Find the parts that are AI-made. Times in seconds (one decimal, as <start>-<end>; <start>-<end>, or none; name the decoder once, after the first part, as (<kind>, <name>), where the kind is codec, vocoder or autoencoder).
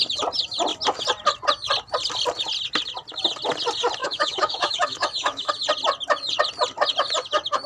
4.0-5.5 (autoencoder, DAC-VAE)